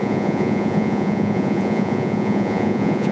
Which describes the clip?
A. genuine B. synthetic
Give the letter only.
B